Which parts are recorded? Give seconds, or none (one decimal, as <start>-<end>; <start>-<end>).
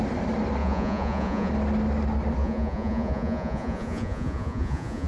0.0-0.6; 1.5-2.4